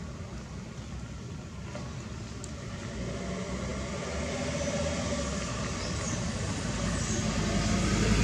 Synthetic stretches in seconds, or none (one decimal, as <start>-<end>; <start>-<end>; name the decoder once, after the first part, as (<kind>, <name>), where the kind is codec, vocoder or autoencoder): none